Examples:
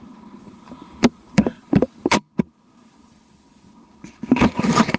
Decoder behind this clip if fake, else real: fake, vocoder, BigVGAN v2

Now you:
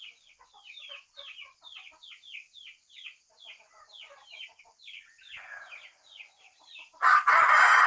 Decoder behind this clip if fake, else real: fake, vocoder, Vocos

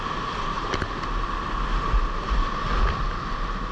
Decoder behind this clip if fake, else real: real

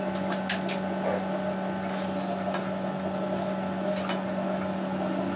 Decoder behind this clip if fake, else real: real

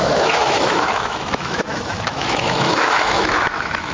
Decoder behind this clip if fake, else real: fake, autoencoder, DAC-VAE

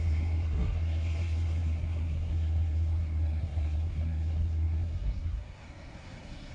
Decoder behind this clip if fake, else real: fake, codec, SNAC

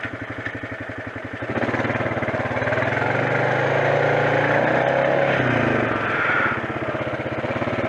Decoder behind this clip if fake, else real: real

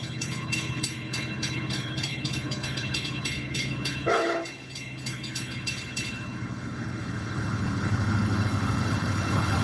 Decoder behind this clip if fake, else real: fake, codec, HILCodec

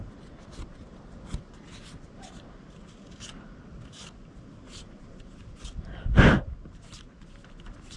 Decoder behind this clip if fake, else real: real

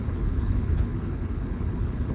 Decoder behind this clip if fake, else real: fake, codec, HILCodec